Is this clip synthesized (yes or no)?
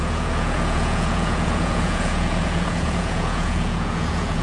yes